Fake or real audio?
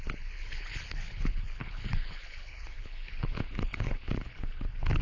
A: fake